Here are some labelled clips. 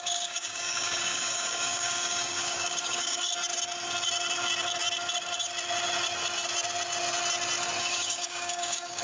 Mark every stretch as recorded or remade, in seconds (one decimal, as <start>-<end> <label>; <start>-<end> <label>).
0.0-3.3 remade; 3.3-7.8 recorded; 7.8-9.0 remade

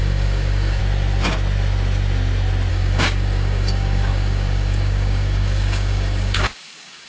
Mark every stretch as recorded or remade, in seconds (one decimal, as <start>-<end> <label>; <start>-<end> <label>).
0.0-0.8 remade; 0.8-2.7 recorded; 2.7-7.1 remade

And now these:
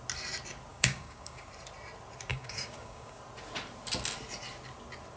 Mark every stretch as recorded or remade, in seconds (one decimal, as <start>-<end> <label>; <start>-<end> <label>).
0.0-0.7 recorded; 0.7-1.5 remade; 1.5-2.3 recorded; 2.3-3.2 remade; 3.2-5.2 recorded

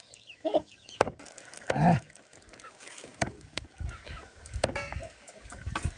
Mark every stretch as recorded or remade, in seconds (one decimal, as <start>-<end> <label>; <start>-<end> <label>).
0.0-6.0 remade